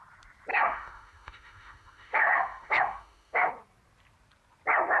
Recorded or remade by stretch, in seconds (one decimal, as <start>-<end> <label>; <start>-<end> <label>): 0.0-0.5 recorded; 0.5-3.5 remade; 3.5-5.0 recorded